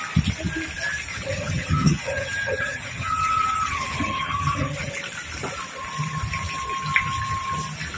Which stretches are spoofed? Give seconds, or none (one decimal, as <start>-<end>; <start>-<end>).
1.1-4.9